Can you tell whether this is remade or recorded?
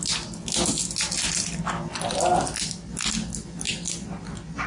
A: recorded